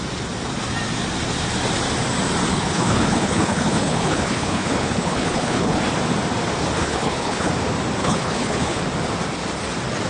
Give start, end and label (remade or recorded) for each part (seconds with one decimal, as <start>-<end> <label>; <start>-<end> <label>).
0.0-2.5 recorded; 2.5-5.8 remade; 5.8-6.8 recorded; 6.8-7.5 remade; 7.5-8.0 recorded; 8.0-8.8 remade; 8.8-10.1 recorded